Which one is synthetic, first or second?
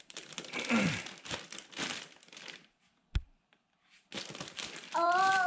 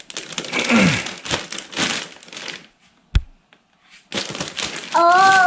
first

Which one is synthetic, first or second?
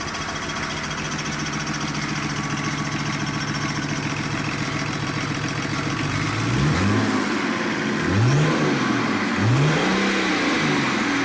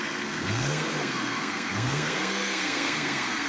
second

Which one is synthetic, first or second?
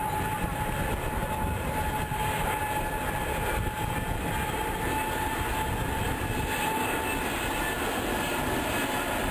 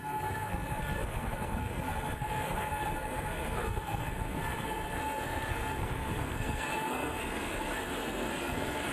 second